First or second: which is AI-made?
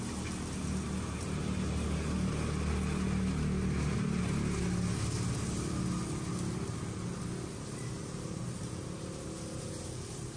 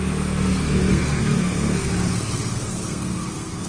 second